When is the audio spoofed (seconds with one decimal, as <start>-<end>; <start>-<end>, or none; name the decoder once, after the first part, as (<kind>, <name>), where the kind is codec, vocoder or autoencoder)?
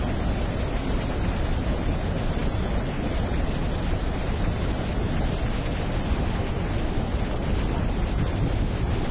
none